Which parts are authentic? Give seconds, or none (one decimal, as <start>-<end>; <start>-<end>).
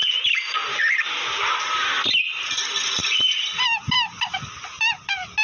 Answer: 0.0-5.4